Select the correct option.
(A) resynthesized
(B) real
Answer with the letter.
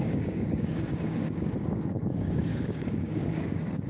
A